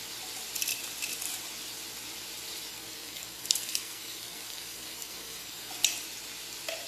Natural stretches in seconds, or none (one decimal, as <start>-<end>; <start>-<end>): 0.0-2.7; 5.7-6.9